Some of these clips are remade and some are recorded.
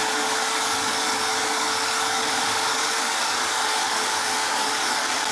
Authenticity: remade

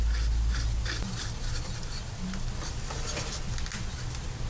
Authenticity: recorded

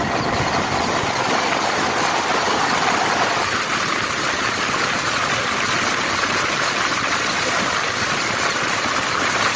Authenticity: recorded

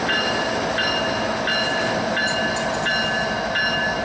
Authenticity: recorded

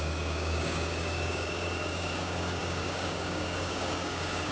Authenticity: remade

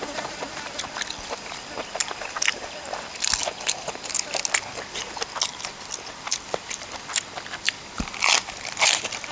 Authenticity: recorded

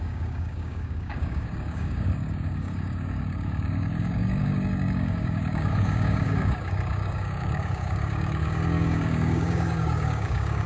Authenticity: remade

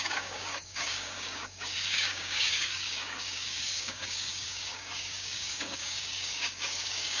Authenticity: remade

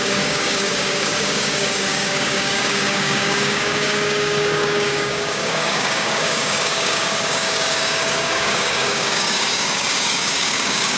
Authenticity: remade